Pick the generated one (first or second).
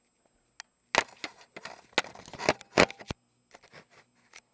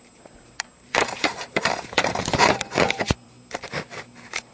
second